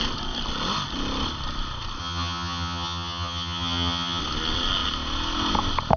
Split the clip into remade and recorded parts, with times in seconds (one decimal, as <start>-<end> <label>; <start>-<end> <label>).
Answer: 0.0-2.0 recorded; 2.0-4.2 remade; 4.2-6.0 recorded